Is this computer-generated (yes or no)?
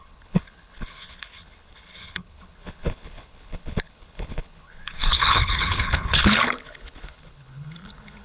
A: yes